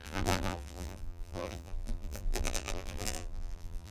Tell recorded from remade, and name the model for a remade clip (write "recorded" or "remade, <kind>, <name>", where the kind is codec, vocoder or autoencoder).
remade, vocoder, BigVGAN v2